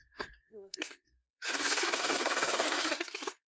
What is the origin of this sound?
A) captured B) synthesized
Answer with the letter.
B